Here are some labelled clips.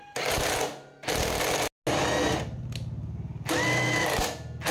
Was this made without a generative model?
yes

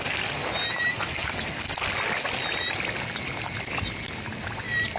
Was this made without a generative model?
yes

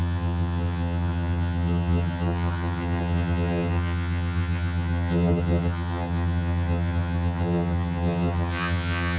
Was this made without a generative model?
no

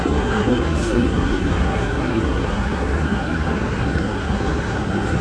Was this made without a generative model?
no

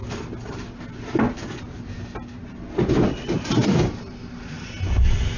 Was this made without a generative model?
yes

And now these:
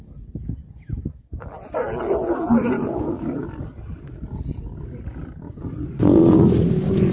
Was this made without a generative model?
yes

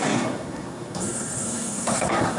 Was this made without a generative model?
no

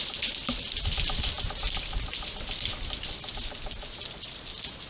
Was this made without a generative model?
yes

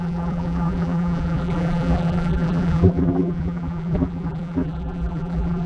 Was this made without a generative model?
no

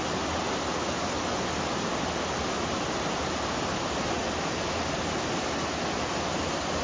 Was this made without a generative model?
yes